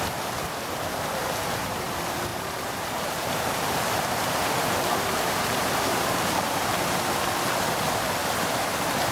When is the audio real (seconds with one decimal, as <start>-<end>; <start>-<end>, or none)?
0.0-1.2; 1.9-2.3; 7.3-8.2

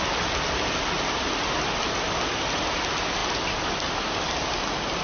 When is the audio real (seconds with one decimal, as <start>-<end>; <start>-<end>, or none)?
0.0-5.0

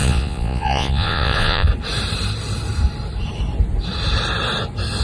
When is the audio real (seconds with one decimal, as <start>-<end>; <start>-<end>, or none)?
1.7-5.0

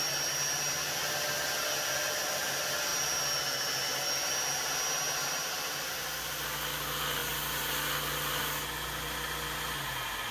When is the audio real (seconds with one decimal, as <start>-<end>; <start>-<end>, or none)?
0.0-10.3

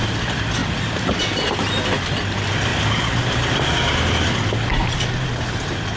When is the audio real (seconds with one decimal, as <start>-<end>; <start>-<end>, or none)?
0.0-0.6; 1.2-4.7; 5.6-6.0